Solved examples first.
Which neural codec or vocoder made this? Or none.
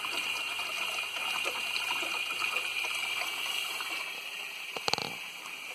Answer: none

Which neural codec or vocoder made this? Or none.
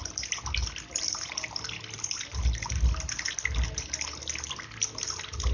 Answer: none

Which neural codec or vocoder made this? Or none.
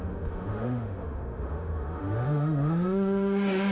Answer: autoencoder, DAC-VAE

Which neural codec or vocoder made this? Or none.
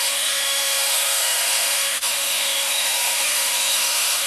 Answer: autoencoder, DAC-VAE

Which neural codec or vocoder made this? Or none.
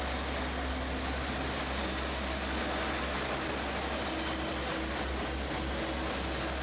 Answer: none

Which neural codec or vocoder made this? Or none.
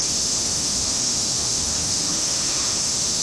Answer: autoencoder, DAC-VAE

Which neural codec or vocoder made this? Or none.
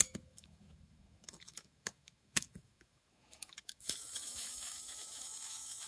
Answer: autoencoder, DAC-VAE